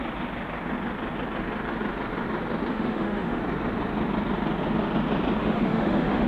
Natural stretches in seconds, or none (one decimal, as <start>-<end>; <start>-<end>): 0.0-2.7; 3.4-5.4